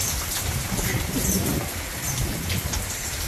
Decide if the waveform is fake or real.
real